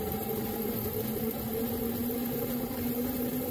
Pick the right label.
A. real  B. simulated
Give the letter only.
A